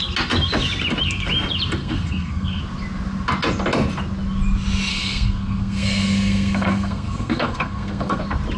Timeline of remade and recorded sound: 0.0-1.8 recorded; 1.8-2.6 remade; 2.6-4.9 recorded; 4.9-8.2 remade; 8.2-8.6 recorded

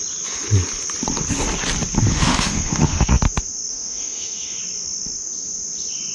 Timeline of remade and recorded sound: 0.0-2.1 recorded; 2.1-3.2 remade; 3.2-3.7 recorded; 3.7-4.6 remade; 4.6-6.1 recorded

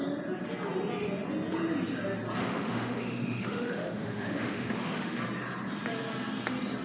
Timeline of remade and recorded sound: 0.0-2.4 recorded; 2.4-5.2 remade; 5.2-6.8 recorded

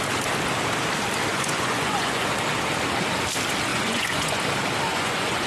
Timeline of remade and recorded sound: 0.0-1.3 recorded; 1.3-2.3 remade; 2.3-3.7 recorded; 3.7-4.4 remade; 4.4-4.9 recorded; 4.9-5.5 remade

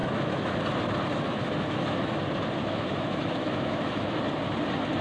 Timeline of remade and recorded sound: 0.0-0.6 remade; 0.6-1.1 recorded; 1.1-2.1 remade; 2.1-2.6 recorded; 2.6-4.2 remade; 4.2-5.0 recorded